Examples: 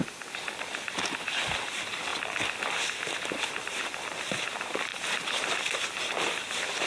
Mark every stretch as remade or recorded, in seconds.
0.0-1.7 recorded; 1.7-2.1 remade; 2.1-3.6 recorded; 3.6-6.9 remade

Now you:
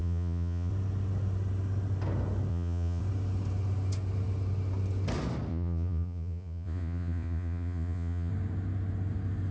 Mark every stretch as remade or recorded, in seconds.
0.0-0.7 remade; 0.7-2.5 recorded; 2.5-3.0 remade; 3.0-5.5 recorded; 5.5-8.3 remade; 8.3-9.5 recorded

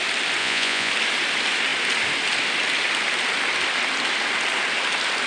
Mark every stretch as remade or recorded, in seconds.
0.0-0.4 recorded; 0.4-0.9 remade; 0.9-5.3 recorded

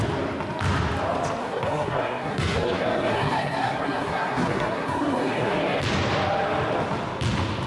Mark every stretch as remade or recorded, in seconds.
0.0-1.4 recorded; 1.4-5.8 remade; 5.8-7.7 recorded

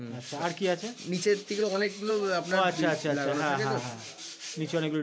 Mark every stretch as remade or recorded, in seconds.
0.0-1.6 recorded; 1.6-2.1 remade; 2.1-5.0 recorded

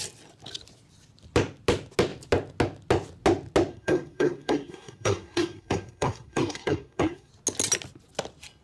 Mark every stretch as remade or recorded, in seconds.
0.0-3.7 recorded; 3.7-7.3 remade; 7.3-8.6 recorded

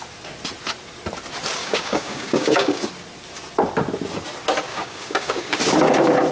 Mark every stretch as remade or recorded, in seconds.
0.0-1.6 recorded; 1.6-2.9 remade; 2.9-4.7 recorded; 4.7-5.6 remade; 5.6-6.3 recorded

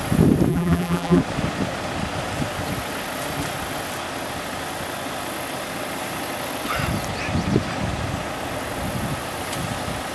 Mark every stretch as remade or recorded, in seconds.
0.0-0.5 recorded; 0.5-1.2 remade; 1.2-10.1 recorded